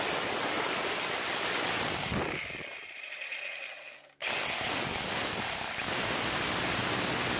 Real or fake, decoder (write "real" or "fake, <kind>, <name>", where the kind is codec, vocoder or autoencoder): real